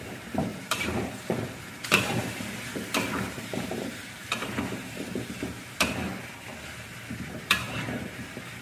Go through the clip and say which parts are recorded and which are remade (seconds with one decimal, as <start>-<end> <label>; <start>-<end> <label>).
0.0-2.7 remade; 2.7-3.5 recorded; 3.5-6.1 remade; 6.1-7.2 recorded; 7.2-8.6 remade